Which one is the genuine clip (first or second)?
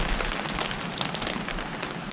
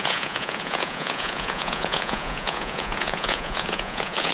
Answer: first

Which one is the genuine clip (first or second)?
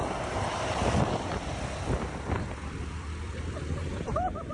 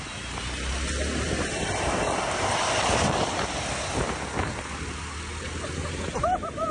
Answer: second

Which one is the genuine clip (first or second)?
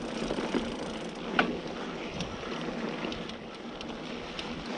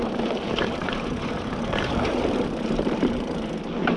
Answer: first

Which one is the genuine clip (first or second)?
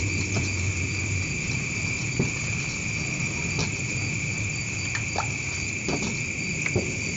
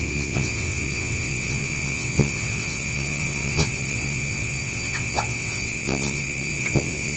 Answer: first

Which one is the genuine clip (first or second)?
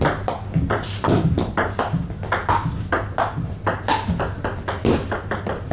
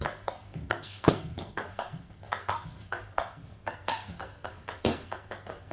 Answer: first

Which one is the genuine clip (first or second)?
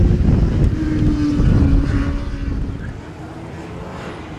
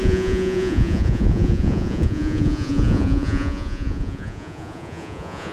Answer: first